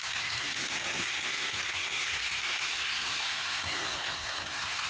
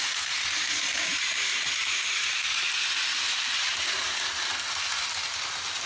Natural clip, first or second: second